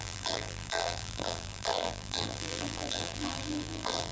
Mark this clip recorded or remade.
remade